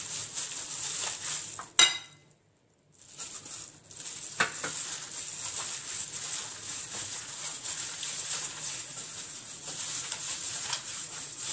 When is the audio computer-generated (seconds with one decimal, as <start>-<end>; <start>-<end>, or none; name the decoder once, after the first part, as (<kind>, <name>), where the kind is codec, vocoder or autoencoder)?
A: 6.7-11.5 (vocoder, Vocos)